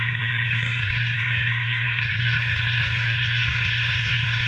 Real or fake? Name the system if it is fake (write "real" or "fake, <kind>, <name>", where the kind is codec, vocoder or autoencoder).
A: fake, codec, SNAC